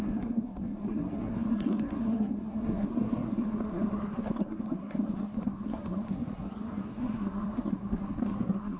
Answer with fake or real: fake